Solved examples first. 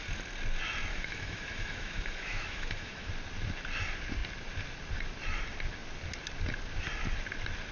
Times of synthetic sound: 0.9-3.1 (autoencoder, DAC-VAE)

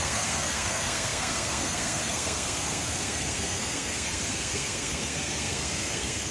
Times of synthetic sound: 0.0-6.3 (codec, SNAC)

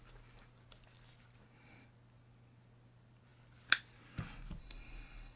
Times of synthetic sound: 4.6-5.4 (codec, HILCodec)

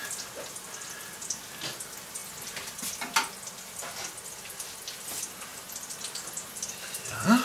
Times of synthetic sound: none

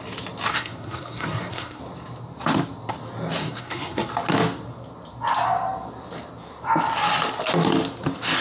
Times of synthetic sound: 0.5-1.8 (codec, SNAC); 3.4-4.1

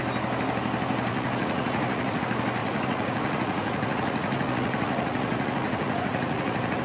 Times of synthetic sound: 1.1-2.2 (vocoder, Vocos); 2.6-6.8